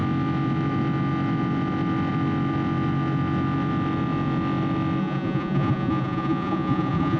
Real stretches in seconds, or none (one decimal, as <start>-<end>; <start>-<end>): 0.0-5.0